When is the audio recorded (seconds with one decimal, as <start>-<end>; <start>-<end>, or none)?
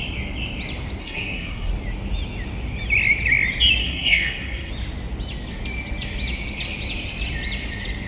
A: 0.0-1.0; 1.7-3.8; 4.7-8.1